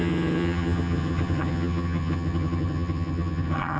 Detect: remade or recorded remade